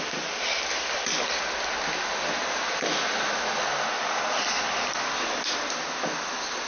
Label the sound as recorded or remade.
recorded